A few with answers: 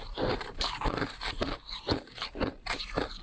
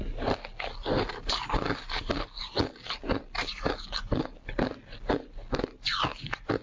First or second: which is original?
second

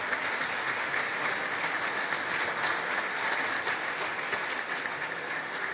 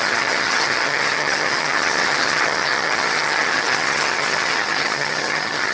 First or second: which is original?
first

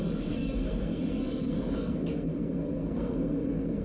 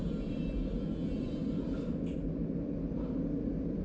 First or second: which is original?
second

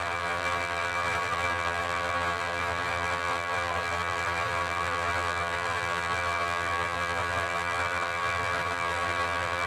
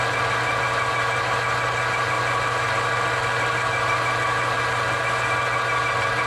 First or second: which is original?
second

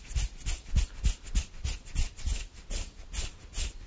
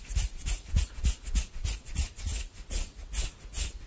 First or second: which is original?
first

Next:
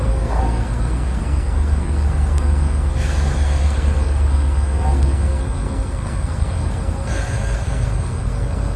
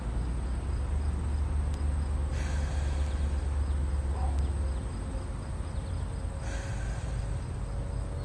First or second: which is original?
second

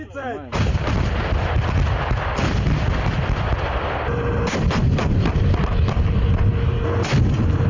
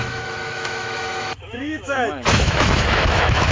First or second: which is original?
first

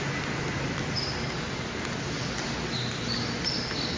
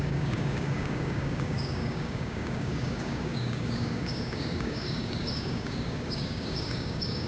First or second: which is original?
first